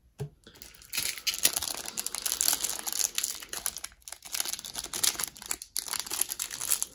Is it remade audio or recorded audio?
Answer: recorded